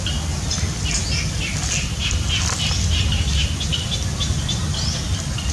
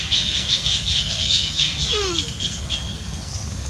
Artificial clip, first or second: second